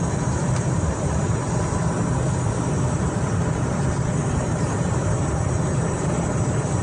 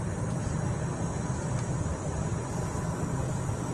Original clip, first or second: second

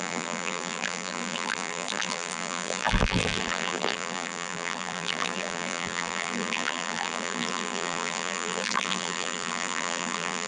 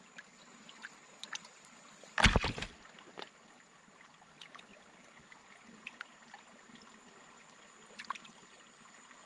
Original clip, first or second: second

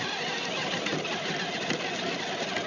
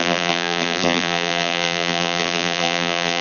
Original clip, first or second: first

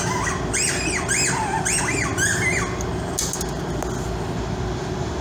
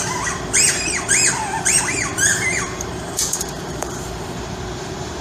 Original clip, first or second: first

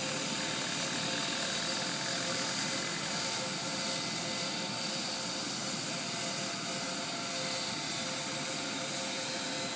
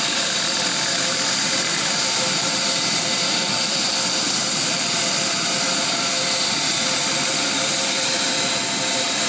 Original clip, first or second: first